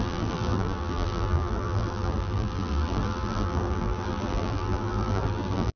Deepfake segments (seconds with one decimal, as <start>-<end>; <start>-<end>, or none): 0.0-5.8